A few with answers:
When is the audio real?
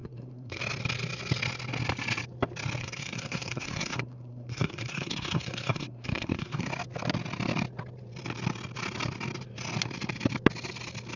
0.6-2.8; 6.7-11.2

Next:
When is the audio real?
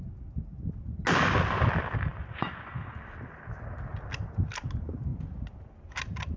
0.0-6.4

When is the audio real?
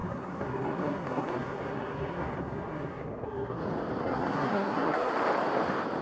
3.6-4.0; 5.1-6.0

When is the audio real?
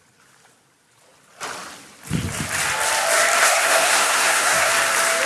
0.0-3.4; 4.7-5.3